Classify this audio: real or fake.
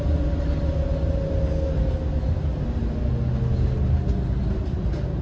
real